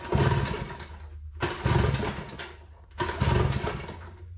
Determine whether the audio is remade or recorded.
recorded